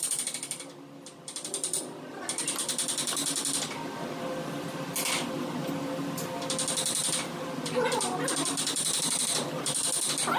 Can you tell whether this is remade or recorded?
recorded